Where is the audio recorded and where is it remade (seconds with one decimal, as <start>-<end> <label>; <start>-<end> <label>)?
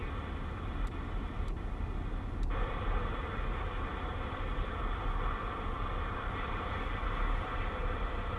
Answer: 0.0-8.4 recorded